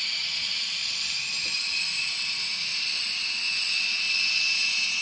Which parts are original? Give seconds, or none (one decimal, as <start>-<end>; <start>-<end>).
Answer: 0.8-1.6; 2.7-4.5